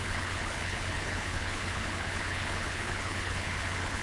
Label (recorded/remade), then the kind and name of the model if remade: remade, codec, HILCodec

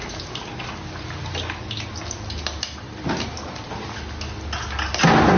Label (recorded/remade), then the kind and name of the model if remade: recorded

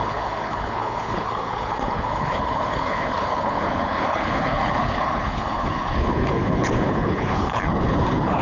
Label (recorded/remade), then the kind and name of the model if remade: remade, codec, HILCodec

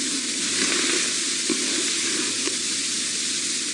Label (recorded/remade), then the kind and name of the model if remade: recorded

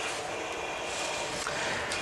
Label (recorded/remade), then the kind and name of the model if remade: recorded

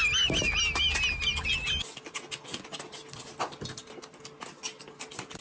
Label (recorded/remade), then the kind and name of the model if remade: recorded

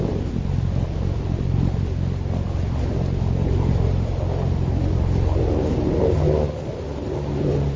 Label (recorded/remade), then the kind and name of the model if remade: recorded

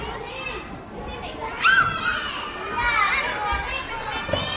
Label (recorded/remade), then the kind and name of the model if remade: recorded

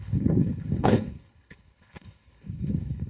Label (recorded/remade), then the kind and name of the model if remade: remade, codec, HILCodec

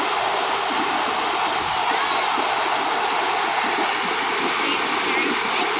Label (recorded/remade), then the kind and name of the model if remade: recorded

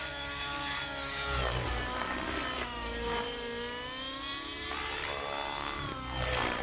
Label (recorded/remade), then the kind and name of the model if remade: recorded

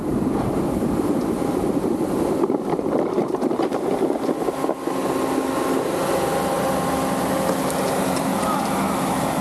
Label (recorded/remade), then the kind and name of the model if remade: recorded